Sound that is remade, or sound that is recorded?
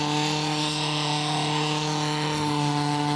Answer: remade